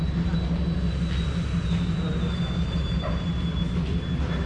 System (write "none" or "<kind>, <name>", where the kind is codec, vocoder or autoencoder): none